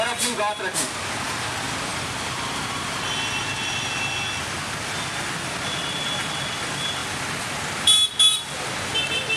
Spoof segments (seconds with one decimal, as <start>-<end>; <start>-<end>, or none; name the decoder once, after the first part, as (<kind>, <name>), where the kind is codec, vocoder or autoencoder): 1.9-3.4 (vocoder, BigVGAN v2)